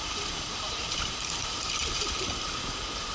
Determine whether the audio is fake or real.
fake